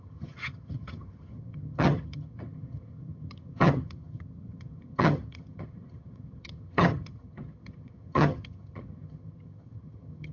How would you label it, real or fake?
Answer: fake